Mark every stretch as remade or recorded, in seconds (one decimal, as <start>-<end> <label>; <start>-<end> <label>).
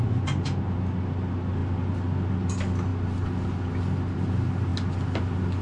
0.0-5.6 recorded